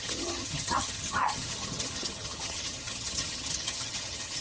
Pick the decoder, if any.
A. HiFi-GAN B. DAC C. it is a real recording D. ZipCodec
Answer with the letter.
A